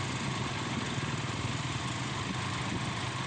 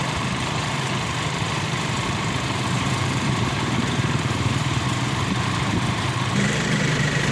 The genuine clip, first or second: first